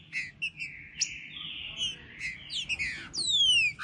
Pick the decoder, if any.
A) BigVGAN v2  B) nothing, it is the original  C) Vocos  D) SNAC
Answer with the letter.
B